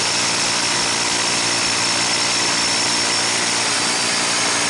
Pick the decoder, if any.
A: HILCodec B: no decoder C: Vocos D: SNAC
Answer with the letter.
B